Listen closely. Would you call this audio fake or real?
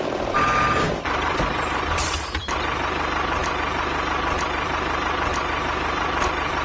fake